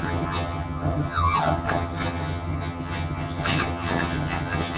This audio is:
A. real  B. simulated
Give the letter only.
B